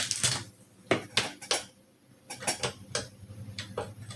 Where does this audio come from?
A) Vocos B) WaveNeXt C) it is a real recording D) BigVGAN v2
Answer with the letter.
C